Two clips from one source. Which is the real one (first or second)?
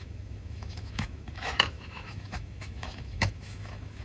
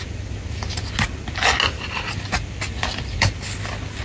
second